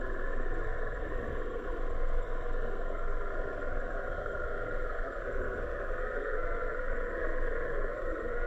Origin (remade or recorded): remade